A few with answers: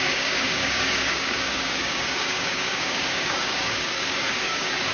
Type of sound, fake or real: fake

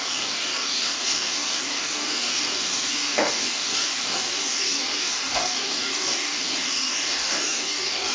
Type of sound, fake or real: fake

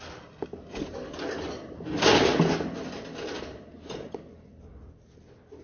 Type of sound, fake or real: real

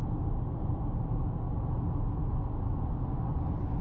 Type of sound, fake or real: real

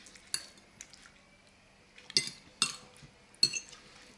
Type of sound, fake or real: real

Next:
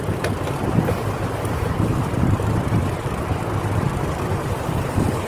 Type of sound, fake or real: real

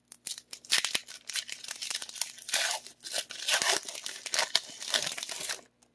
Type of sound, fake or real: real